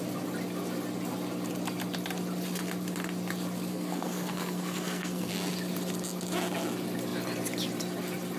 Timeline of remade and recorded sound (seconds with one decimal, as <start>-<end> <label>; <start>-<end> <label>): 0.0-3.7 recorded; 3.7-5.3 remade; 5.3-8.4 recorded

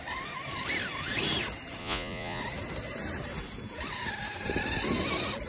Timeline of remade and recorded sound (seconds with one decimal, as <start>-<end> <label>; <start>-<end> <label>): 0.0-1.8 recorded; 1.8-2.4 remade; 2.4-5.5 recorded

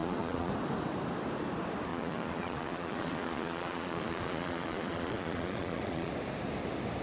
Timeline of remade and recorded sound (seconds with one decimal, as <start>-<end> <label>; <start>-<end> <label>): 0.0-0.5 remade; 0.5-1.9 recorded; 1.9-6.1 remade; 6.1-7.0 recorded

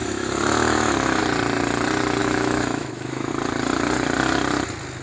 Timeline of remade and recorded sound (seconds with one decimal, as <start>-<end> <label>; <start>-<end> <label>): 0.0-1.2 remade; 1.2-2.2 recorded; 2.2-3.3 remade; 3.3-5.0 recorded

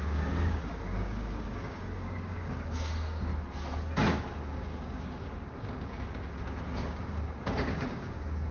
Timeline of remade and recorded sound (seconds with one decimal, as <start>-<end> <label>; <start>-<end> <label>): 0.0-3.3 remade; 3.3-4.1 recorded; 4.1-8.5 remade

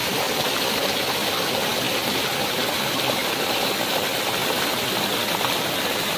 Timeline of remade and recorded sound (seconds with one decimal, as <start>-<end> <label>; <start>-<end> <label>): 0.0-6.2 recorded

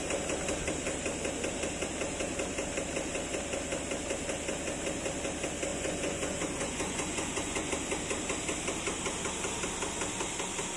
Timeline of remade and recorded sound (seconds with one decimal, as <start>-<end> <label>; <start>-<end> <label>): 0.0-5.7 recorded; 5.7-7.7 remade; 7.7-10.8 recorded